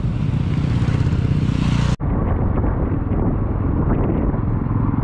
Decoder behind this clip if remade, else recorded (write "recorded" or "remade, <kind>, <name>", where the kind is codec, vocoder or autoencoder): recorded